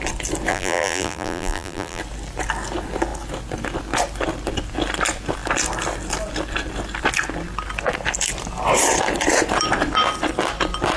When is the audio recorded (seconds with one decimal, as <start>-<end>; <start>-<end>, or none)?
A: 0.0-0.5; 2.0-11.0